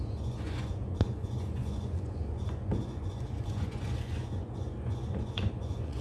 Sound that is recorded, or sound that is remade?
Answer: remade